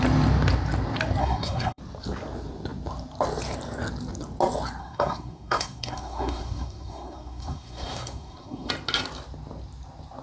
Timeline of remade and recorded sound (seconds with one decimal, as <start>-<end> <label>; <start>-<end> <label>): 0.0-1.2 recorded; 1.2-1.8 remade; 1.8-4.8 recorded; 4.8-8.7 remade; 8.7-10.2 recorded